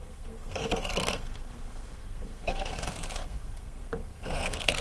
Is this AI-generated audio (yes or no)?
yes